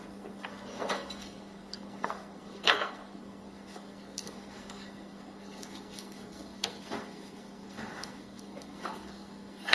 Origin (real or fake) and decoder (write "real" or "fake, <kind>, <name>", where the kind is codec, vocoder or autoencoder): fake, codec, SNAC